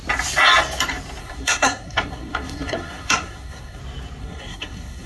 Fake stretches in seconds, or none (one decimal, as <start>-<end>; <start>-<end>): 1.2-3.8; 4.2-5.1